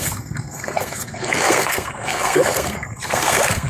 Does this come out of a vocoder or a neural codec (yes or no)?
yes